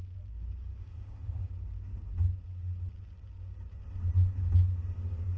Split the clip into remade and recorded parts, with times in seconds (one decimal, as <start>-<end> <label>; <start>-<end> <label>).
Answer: 0.0-0.8 recorded; 0.8-1.5 remade; 1.5-5.4 recorded